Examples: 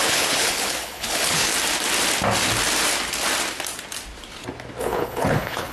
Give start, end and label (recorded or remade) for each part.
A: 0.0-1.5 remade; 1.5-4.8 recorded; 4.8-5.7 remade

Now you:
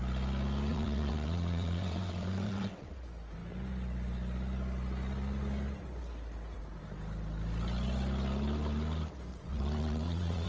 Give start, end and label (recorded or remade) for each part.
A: 0.0-0.7 recorded; 0.7-2.9 remade; 2.9-9.3 recorded; 9.3-10.5 remade

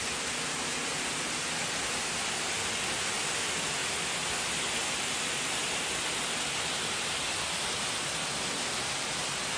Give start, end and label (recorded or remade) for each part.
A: 0.0-9.6 recorded